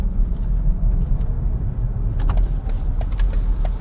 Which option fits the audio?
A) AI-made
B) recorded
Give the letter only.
B